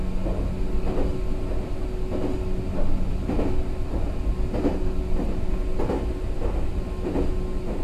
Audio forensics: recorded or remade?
recorded